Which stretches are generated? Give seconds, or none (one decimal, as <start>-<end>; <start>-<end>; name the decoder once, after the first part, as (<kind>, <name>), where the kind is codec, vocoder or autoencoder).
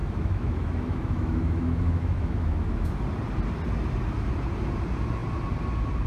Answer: 0.0-3.0 (autoencoder, DAC-VAE)